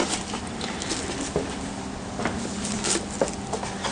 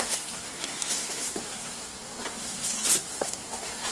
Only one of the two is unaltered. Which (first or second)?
first